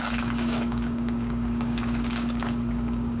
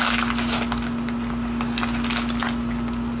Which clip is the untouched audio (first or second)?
second